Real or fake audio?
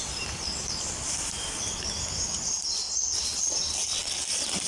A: fake